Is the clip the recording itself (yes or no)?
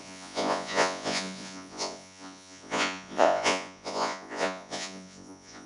no